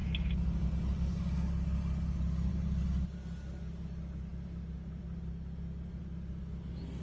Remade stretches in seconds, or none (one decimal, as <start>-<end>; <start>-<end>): none